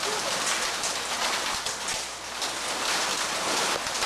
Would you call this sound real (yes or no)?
yes